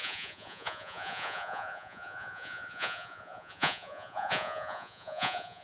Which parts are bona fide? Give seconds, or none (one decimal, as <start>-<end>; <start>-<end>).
none